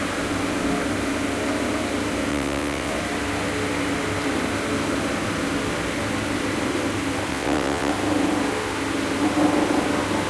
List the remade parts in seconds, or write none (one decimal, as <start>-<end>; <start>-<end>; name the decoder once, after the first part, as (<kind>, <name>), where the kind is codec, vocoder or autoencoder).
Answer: 2.3-2.9 (vocoder, WaveNeXt); 7.3-7.9